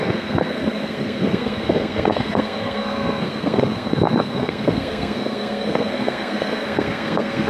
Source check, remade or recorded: remade